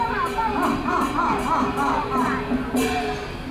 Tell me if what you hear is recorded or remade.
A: recorded